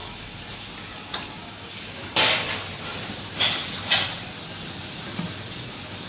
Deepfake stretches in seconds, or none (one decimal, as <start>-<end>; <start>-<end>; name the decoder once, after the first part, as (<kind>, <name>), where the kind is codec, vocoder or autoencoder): 0.0-0.7 (autoencoder, DAC-VAE); 1.4-2.1